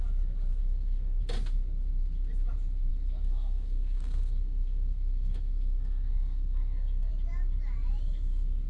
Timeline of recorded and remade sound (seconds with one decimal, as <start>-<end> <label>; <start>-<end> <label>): 0.0-0.5 recorded; 0.5-1.2 remade; 1.2-2.9 recorded; 2.9-7.1 remade; 7.1-8.7 recorded